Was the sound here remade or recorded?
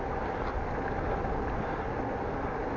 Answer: recorded